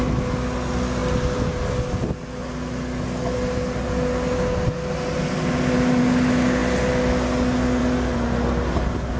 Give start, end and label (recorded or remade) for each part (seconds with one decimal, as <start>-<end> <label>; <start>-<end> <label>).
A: 0.0-9.2 recorded